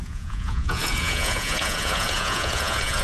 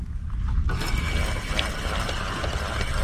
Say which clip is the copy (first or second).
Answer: first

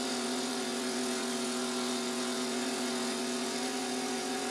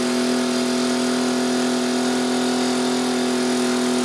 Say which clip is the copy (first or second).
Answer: first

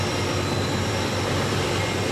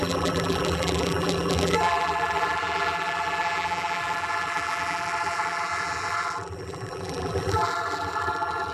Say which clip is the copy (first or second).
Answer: second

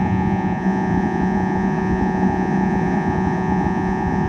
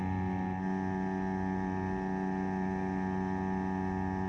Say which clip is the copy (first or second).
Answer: first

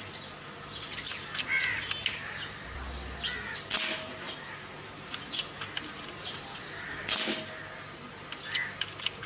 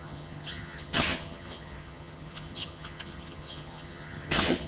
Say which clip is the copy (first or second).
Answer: second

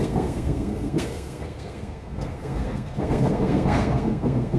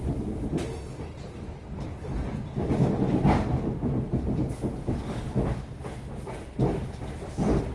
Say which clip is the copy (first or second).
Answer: first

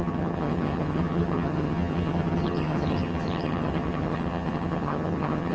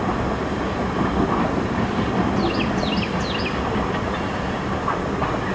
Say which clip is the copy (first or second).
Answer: first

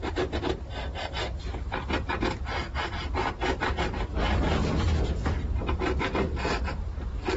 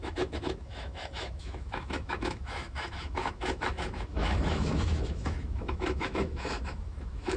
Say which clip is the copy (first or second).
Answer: second